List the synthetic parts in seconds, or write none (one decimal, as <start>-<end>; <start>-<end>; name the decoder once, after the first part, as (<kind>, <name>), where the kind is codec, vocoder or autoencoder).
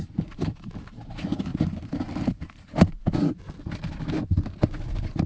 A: none